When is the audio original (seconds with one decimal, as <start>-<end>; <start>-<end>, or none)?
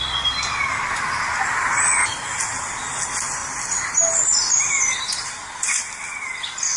0.0-6.8